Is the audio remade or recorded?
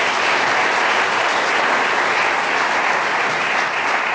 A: recorded